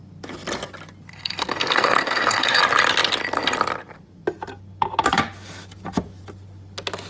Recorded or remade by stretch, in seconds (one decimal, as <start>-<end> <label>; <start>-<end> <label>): 0.0-1.1 recorded; 1.1-2.6 remade; 2.6-7.1 recorded